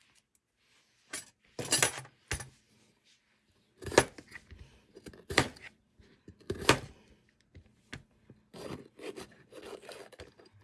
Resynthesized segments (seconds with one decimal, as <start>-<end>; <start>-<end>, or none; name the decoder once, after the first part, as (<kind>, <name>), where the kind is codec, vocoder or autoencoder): none